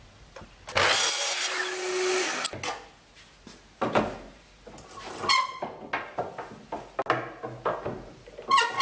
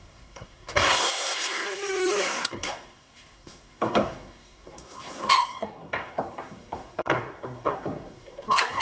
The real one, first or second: first